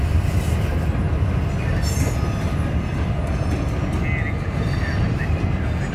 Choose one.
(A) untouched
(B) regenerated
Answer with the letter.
A